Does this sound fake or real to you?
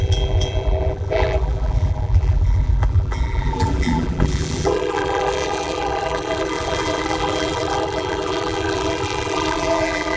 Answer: fake